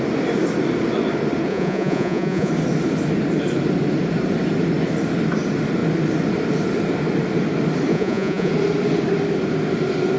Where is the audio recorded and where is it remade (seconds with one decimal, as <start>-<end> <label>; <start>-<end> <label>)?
0.0-1.5 recorded; 1.5-2.5 remade; 2.5-7.9 recorded; 7.9-8.5 remade; 8.5-10.2 recorded